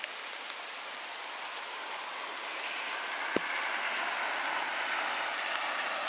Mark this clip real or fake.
real